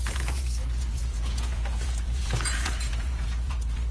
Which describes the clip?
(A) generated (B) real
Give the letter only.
A